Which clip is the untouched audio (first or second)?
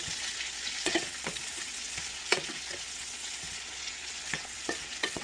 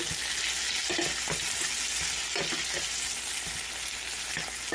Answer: second